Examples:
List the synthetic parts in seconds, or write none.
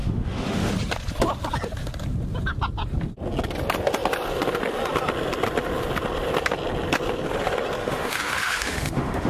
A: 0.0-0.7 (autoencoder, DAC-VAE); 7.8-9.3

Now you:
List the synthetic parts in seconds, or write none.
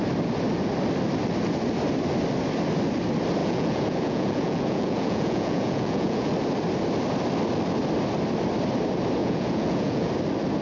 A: 3.4-6.3 (vocoder, Vocos); 9.2-10.1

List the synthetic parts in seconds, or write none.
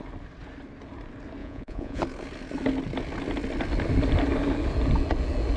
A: 1.4-2.0 (vocoder, Vocos)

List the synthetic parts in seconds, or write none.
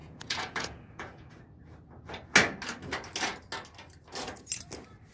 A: 0.0-1.3 (vocoder, Vocos)